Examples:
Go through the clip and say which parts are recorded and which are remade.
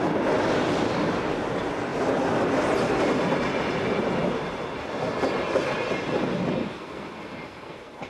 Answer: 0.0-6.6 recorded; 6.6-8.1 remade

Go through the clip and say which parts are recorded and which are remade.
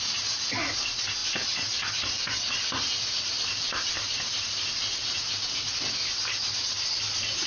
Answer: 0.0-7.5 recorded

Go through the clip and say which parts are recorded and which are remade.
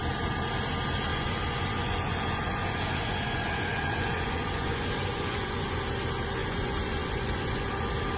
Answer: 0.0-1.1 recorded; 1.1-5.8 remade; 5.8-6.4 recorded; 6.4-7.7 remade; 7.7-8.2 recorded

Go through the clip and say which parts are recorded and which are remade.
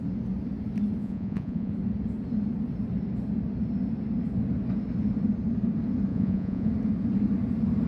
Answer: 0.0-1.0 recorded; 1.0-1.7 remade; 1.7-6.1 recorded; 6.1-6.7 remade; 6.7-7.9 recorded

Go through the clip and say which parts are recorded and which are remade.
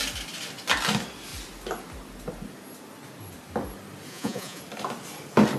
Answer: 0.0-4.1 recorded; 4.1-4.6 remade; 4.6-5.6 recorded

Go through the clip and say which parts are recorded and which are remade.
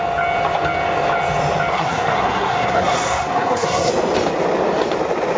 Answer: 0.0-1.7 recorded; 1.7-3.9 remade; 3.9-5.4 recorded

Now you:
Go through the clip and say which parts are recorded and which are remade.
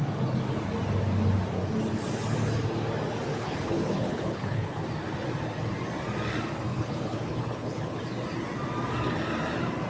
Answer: 0.0-3.3 recorded; 3.3-4.8 remade; 4.8-6.7 recorded; 6.7-8.0 remade; 8.0-9.9 recorded